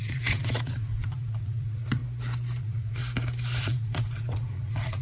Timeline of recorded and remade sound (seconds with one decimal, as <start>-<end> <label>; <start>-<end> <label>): 0.0-2.0 remade; 2.0-2.6 recorded; 2.6-3.0 remade; 3.0-3.6 recorded; 3.6-5.0 remade